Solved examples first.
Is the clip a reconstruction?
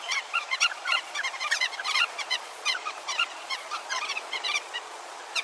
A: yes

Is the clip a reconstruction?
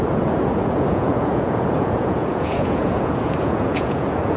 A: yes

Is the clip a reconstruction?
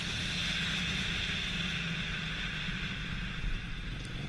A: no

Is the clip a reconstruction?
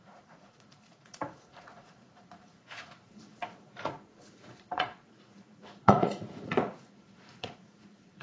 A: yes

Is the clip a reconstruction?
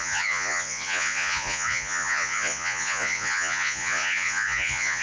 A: yes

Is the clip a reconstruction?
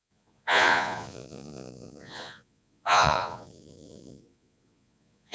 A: yes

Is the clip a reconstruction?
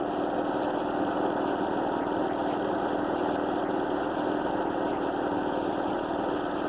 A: no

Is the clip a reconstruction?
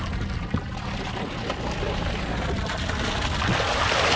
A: no